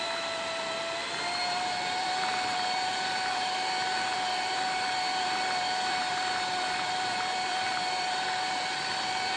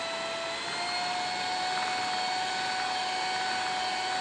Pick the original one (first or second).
second